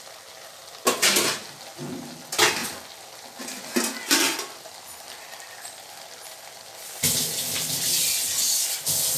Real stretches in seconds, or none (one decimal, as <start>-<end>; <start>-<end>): 0.0-9.2